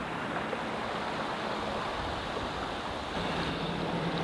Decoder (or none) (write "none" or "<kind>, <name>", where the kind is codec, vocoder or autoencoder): none